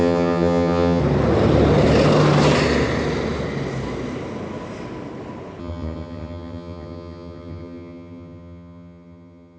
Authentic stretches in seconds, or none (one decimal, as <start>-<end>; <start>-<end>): 1.0-5.6